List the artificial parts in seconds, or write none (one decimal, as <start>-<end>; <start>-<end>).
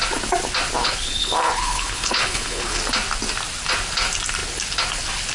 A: 0.8-2.8